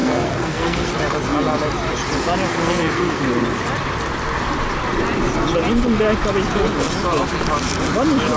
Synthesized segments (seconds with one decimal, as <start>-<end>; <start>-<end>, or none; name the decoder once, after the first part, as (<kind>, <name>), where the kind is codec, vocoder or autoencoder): 0.0-0.9 (codec, SNAC); 2.5-3.2